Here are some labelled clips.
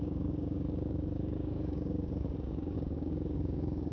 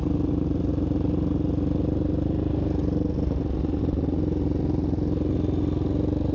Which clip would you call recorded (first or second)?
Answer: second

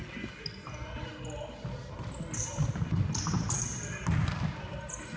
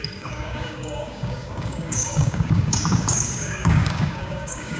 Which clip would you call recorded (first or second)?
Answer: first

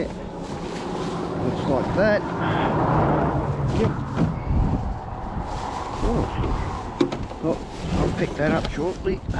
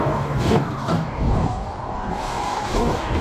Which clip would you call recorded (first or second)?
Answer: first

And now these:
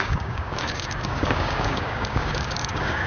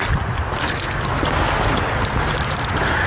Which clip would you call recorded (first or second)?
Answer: second